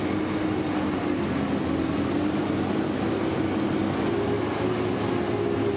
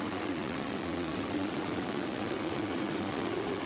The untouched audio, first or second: first